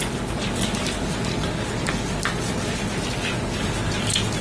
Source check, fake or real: real